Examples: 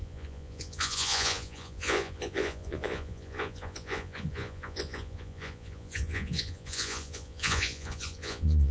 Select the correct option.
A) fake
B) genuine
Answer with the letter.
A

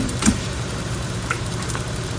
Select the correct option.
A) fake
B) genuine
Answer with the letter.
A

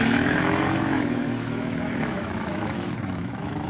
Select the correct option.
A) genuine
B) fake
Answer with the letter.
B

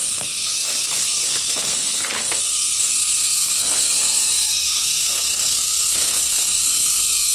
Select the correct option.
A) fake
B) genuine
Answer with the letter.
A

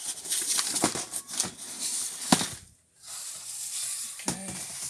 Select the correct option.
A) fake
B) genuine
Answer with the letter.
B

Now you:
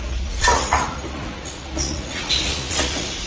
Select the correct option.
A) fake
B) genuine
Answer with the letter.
A